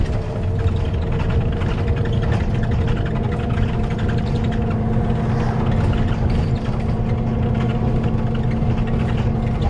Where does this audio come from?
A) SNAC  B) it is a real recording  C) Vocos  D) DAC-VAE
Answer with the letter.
B